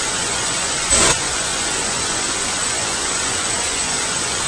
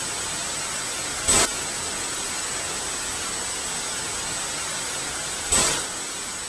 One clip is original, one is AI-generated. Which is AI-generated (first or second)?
first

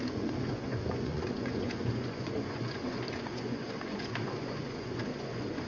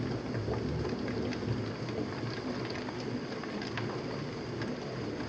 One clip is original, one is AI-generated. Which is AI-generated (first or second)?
first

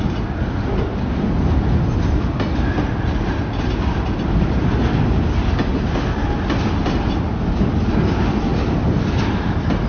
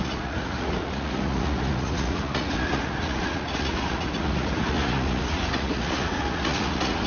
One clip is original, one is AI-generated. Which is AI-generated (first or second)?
second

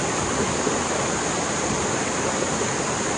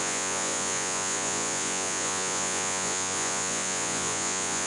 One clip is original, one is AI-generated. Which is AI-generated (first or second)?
second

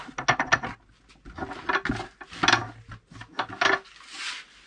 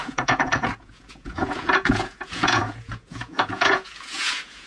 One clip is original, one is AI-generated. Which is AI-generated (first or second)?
second